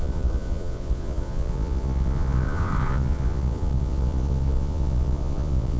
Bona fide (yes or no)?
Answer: no